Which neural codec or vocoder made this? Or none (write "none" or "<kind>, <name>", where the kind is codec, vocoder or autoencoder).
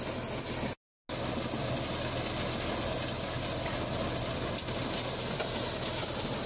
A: none